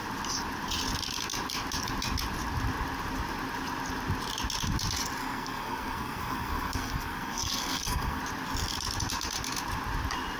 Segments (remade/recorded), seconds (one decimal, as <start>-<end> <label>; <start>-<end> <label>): 0.0-5.2 recorded; 5.2-8.2 remade; 8.2-10.4 recorded